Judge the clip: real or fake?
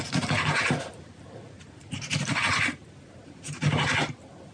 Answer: real